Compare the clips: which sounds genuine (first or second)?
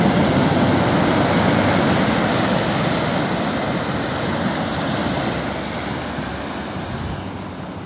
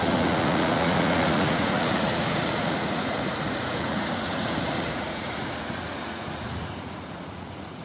first